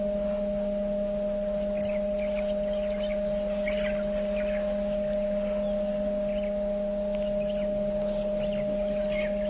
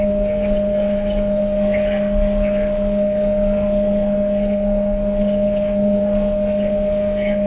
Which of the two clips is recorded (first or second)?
first